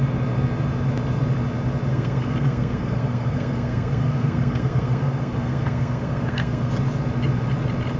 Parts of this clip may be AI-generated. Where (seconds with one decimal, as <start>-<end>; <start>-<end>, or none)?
1.9-6.7